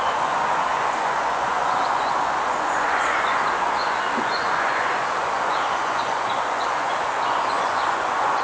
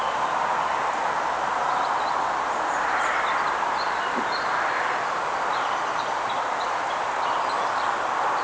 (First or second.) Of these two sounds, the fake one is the first